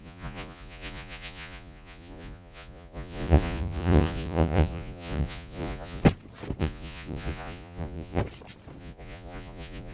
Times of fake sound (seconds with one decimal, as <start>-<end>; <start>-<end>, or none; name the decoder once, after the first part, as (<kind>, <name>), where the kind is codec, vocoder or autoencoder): 0.0-6.0 (vocoder, Vocos); 6.6-8.2; 8.8-9.9